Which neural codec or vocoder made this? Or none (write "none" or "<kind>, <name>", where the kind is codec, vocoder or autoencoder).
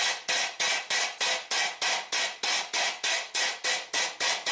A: none